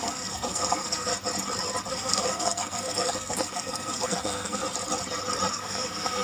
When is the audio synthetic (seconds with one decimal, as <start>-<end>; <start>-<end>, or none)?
0.0-1.1; 1.9-4.6; 5.5-6.2